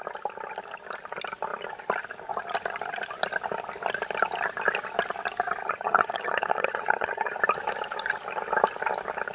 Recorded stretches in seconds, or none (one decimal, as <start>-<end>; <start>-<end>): 0.0-5.6; 7.4-9.3